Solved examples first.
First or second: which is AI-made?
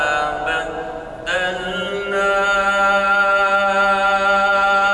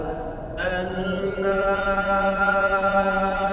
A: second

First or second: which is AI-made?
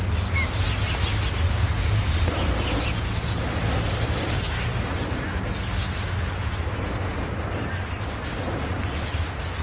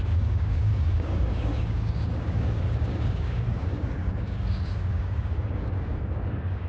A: second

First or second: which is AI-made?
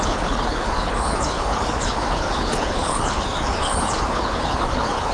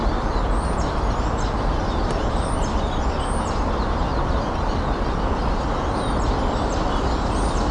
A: first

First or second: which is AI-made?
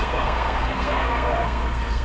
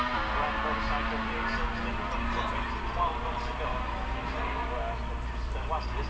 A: first